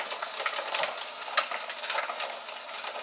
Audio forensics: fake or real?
real